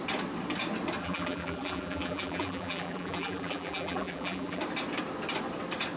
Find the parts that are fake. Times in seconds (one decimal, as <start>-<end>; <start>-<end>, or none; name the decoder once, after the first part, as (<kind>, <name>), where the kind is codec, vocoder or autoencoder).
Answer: 1.0-4.6 (vocoder, BigVGAN v2)